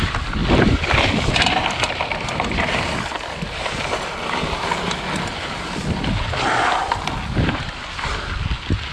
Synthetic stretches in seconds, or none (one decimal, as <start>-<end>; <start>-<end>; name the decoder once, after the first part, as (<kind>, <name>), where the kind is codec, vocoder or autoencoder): 0.0-0.4 (vocoder, BigVGAN v2); 1.0-6.8